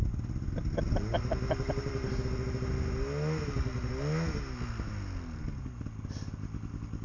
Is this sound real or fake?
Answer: real